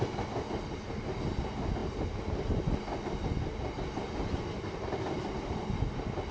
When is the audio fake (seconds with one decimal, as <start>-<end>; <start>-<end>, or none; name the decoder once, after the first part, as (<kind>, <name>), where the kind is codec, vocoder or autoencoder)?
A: none